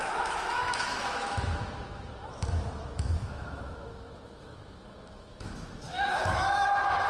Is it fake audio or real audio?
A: fake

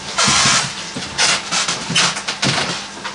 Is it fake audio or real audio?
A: real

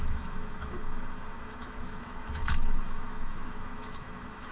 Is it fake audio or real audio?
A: fake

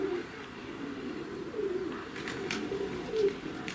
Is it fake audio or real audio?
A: real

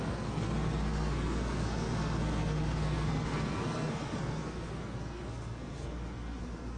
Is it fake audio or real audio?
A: fake